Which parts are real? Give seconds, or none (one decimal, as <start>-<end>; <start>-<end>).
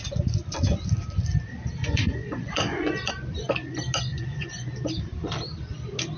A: 0.0-1.8; 3.1-4.1; 4.7-6.2